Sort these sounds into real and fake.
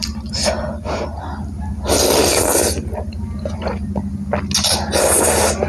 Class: real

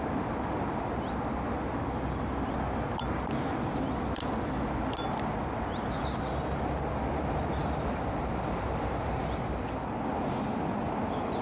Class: real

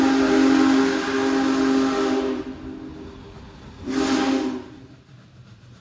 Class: real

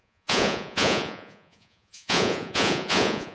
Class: fake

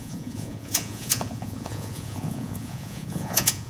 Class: fake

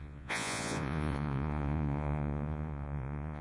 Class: fake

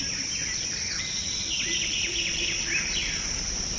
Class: real